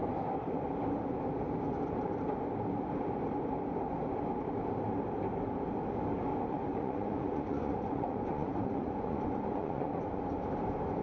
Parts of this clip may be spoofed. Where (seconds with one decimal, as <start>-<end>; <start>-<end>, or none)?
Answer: 6.3-10.2